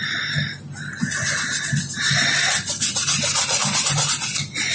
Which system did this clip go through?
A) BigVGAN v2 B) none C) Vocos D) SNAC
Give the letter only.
B